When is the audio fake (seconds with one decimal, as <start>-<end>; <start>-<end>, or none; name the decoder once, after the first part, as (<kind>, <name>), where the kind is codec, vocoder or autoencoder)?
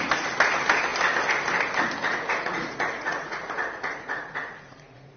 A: 2.0-5.2 (vocoder, Vocos)